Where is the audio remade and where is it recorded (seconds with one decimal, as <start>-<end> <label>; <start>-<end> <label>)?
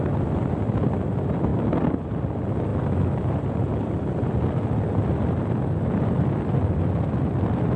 0.0-7.8 recorded